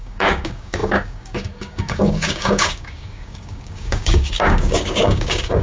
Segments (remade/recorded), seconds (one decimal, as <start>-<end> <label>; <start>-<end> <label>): 0.0-5.6 remade